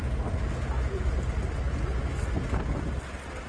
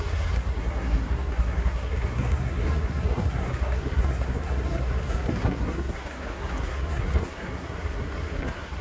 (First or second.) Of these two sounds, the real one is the first